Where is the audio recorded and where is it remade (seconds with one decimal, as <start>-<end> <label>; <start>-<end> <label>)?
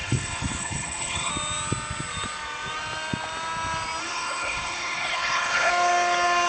0.0-1.3 remade; 1.3-4.0 recorded; 4.0-5.7 remade; 5.7-6.5 recorded